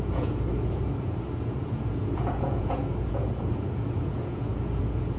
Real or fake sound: fake